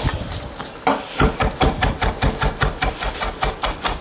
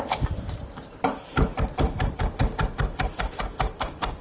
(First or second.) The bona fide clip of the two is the first